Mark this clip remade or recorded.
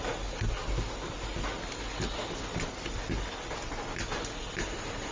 recorded